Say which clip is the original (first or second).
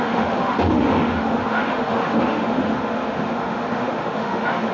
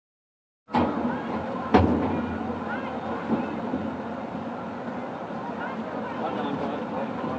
second